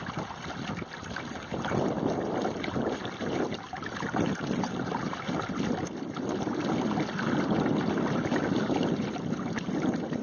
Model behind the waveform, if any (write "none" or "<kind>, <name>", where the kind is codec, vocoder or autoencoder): none